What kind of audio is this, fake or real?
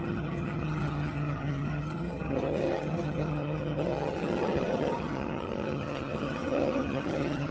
fake